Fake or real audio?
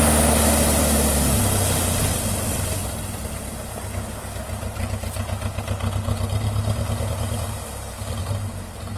real